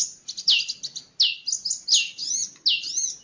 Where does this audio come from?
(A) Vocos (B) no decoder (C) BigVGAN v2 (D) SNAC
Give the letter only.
B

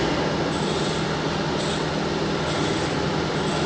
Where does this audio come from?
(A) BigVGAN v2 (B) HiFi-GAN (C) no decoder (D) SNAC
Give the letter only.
C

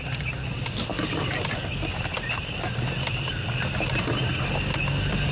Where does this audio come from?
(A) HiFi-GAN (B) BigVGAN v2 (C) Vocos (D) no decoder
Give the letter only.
D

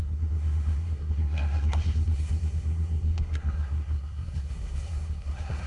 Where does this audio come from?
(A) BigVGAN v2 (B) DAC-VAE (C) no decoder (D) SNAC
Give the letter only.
D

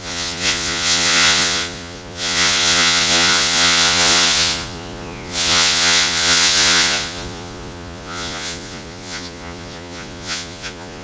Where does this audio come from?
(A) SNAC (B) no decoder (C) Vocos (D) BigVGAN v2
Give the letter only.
C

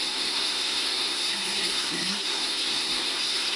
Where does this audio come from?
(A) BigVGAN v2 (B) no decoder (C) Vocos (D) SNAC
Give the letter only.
D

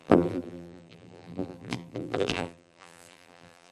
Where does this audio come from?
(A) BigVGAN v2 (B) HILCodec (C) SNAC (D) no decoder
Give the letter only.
A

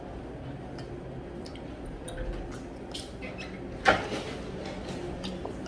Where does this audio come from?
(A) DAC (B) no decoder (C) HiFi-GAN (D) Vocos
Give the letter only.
B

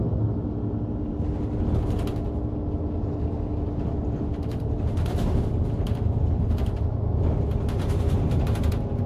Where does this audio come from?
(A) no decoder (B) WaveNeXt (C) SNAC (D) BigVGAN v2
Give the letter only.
A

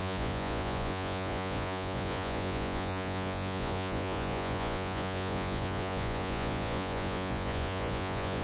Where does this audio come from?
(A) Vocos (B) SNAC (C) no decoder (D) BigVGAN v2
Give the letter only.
A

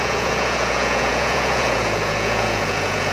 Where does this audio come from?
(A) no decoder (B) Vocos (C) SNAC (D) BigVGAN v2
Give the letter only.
B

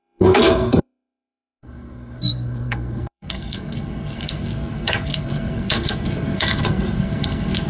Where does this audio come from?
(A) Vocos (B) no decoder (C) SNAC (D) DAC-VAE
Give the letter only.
C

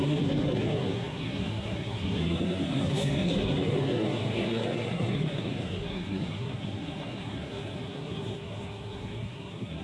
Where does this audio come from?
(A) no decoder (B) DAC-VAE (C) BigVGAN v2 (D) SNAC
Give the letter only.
D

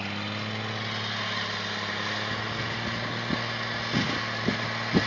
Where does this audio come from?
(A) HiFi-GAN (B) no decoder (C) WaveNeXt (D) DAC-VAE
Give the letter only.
B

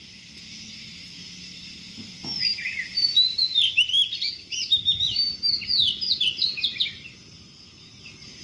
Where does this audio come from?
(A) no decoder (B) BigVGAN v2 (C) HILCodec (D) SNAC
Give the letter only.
A